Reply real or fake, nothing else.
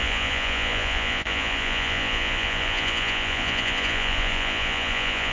fake